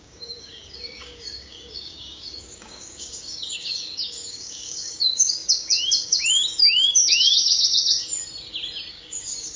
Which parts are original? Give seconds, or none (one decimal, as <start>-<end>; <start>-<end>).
8.0-8.9